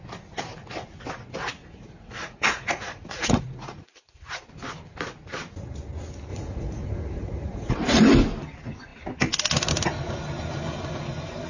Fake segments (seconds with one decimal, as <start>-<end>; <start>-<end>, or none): 1.6-4.4; 6.3-8.0